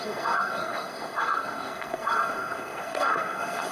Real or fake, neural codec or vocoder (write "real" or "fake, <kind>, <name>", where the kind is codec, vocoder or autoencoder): fake, codec, SNAC